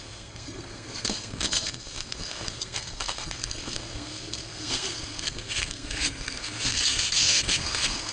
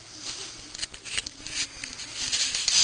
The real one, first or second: second